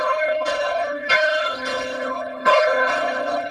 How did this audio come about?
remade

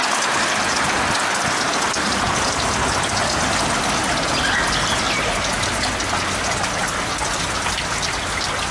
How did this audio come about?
recorded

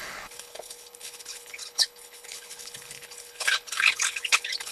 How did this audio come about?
remade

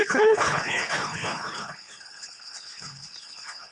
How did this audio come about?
remade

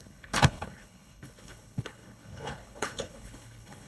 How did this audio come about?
remade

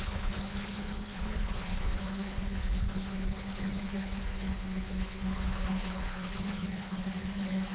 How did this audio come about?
remade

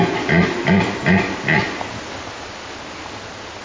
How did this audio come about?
recorded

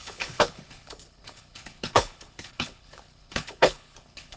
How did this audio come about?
remade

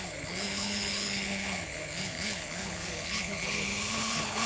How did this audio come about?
remade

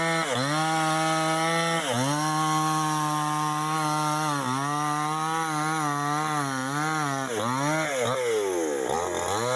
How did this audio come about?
recorded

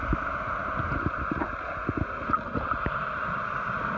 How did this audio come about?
recorded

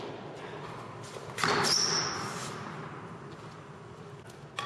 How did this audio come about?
recorded